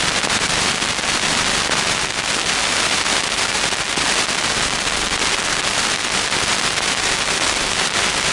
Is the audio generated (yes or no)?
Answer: yes